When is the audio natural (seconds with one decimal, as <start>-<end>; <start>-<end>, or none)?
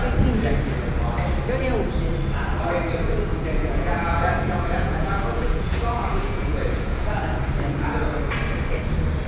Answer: 0.0-3.3; 7.4-9.3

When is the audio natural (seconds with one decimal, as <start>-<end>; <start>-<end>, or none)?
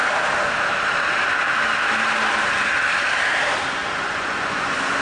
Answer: 0.0-3.8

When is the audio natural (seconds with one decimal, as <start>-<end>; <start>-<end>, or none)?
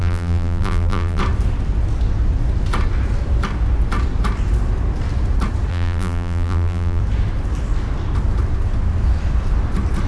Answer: 1.2-5.7; 7.0-10.1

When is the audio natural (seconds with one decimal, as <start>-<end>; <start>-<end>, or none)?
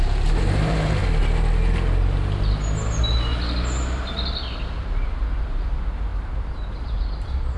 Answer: 1.0-5.4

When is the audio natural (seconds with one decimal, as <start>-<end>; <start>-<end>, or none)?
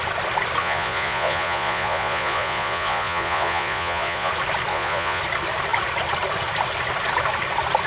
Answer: 0.0-0.6; 4.3-4.7; 5.2-7.9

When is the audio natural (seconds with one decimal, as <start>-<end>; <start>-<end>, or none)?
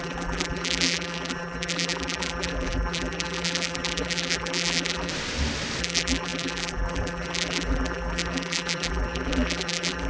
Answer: 5.1-5.8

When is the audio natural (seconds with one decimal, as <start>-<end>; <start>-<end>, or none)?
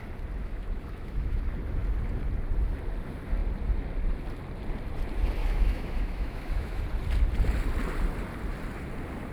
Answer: 0.0-0.4; 1.4-5.4; 6.8-9.3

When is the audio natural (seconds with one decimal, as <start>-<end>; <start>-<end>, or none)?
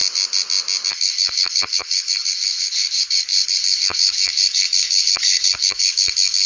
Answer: 0.0-0.9